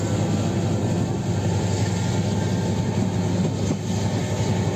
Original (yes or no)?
yes